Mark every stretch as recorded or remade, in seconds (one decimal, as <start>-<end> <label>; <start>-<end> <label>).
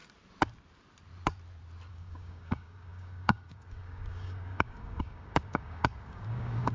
0.0-1.9 recorded; 1.9-6.7 remade